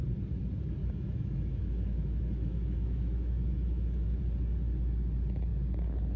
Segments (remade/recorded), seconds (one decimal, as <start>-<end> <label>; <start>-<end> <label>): 0.0-0.8 recorded; 0.8-4.2 remade; 4.2-6.2 recorded